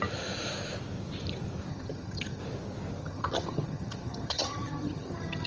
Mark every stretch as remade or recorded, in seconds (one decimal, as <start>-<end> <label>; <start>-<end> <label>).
0.0-1.7 recorded; 1.7-2.4 remade; 2.4-3.0 recorded; 3.0-5.5 remade